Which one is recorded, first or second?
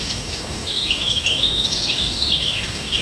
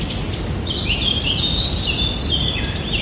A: second